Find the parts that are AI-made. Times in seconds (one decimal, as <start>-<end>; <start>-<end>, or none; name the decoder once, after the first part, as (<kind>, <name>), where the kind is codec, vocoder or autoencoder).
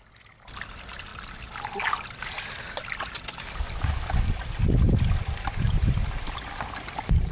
none